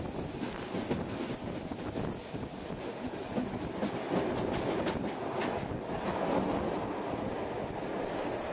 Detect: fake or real real